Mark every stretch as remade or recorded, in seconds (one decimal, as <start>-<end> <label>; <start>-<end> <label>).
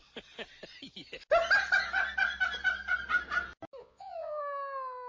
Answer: 0.0-3.8 recorded; 3.8-4.4 remade; 4.4-5.1 recorded